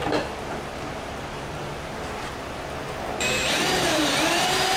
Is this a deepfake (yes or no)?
yes